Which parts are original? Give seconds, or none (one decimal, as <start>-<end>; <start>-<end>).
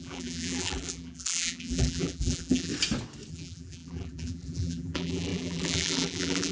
2.7-3.3